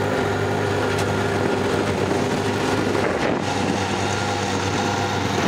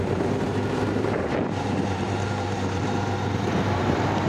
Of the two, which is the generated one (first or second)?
second